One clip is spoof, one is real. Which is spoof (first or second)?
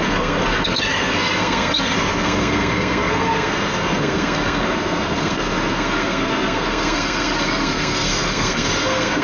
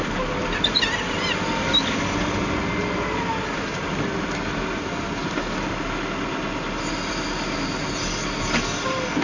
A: first